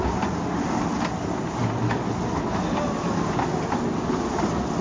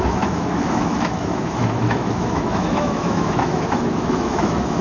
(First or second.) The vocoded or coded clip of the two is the second